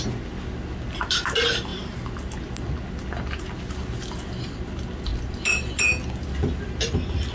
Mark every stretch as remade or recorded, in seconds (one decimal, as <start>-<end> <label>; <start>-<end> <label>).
0.0-7.3 recorded